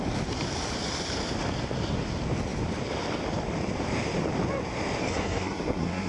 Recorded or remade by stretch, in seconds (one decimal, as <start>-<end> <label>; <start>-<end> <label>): 0.0-5.0 recorded; 5.0-6.1 remade